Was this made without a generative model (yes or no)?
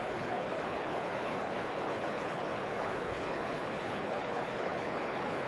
no